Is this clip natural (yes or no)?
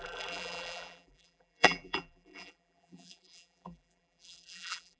no